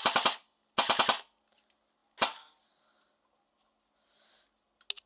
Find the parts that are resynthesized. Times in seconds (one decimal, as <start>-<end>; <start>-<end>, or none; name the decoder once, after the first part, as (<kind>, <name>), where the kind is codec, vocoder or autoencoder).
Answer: none